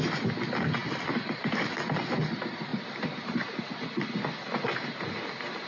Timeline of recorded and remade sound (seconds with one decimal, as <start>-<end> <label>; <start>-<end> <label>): 0.0-2.7 recorded; 2.7-3.6 remade; 3.6-5.7 recorded